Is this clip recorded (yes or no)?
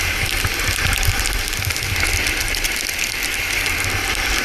yes